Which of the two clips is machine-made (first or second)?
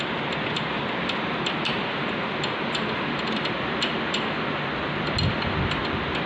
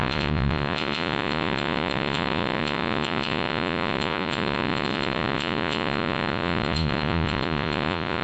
second